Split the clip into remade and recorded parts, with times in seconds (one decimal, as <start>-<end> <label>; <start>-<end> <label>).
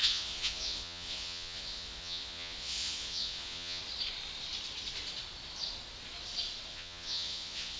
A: 0.0-3.8 remade; 3.8-6.7 recorded; 6.7-7.8 remade